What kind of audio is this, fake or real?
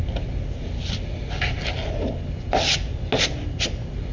real